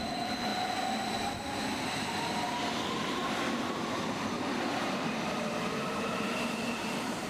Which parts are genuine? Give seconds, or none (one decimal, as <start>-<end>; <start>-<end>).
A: 0.5-4.9